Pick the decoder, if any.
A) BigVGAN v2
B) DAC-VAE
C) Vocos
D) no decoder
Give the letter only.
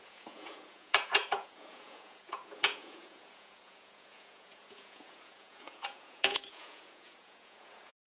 C